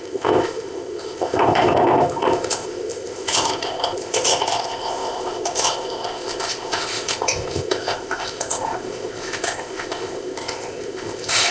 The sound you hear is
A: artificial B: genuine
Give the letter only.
A